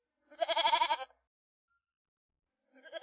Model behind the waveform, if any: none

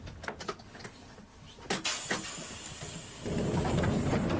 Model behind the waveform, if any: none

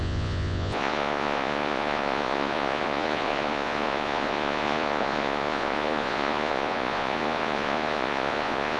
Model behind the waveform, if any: vocoder, Vocos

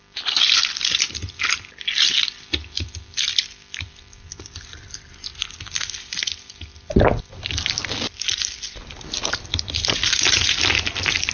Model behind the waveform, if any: none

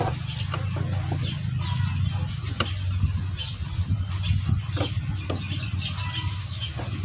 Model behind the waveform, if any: none